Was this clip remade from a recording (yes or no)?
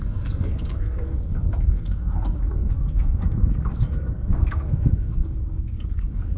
yes